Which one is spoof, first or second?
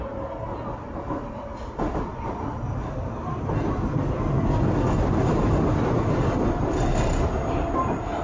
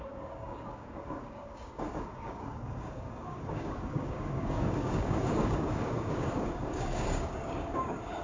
second